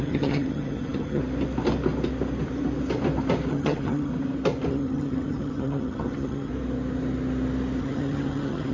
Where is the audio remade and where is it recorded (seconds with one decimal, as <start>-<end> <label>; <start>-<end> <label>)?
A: 0.0-1.2 remade; 1.2-3.5 recorded; 3.5-4.1 remade; 4.1-4.7 recorded; 4.7-6.5 remade; 6.5-7.8 recorded; 7.8-8.7 remade